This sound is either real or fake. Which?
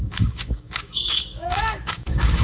fake